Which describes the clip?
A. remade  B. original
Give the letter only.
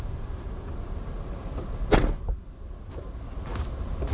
B